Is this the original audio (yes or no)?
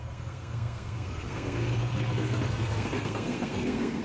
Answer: no